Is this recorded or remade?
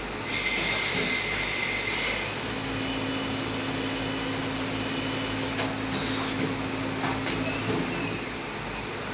recorded